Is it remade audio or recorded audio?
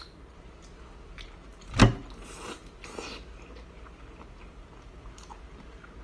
recorded